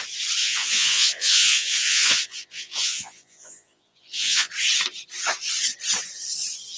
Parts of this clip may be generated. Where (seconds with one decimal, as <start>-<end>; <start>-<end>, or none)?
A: 0.4-4.5